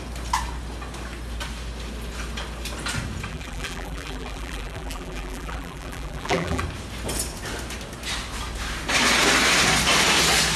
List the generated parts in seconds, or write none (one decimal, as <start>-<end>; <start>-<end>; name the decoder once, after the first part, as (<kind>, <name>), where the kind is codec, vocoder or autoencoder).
3.3-6.6 (vocoder, BigVGAN v2)